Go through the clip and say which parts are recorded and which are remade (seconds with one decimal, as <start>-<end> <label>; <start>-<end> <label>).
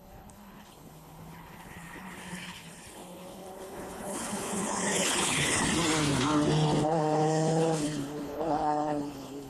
0.0-5.6 remade; 5.6-6.8 recorded; 6.8-9.5 remade